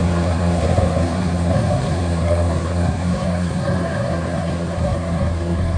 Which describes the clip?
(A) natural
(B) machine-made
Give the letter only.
B